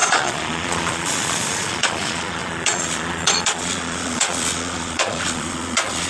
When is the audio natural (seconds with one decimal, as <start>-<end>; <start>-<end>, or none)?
none